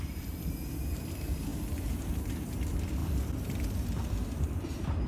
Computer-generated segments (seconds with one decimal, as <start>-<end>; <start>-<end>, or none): 0.0-3.0; 4.4-5.1